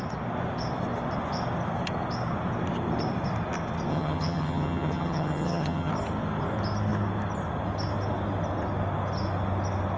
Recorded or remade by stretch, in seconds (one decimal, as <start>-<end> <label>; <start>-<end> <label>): 0.0-3.9 recorded; 3.9-5.9 remade; 5.9-10.0 recorded